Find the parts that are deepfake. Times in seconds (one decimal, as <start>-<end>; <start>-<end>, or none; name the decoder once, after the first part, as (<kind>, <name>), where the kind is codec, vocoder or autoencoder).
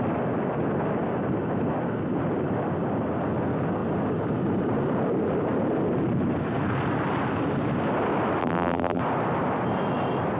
8.4-9.0 (vocoder, BigVGAN v2)